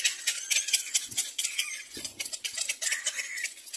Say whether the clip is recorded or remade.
remade